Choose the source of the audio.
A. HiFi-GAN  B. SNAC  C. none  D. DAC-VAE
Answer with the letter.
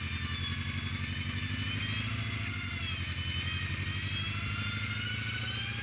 C